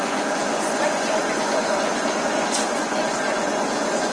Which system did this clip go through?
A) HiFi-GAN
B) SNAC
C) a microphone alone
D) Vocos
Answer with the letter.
D